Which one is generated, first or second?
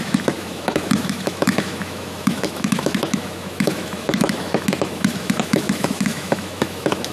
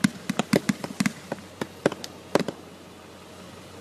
first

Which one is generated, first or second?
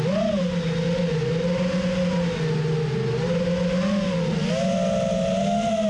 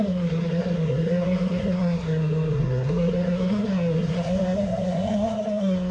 second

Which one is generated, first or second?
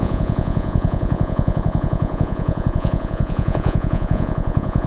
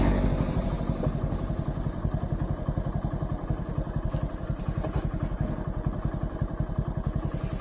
first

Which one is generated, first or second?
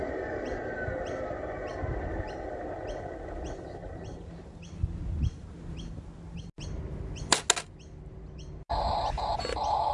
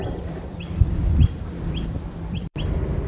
second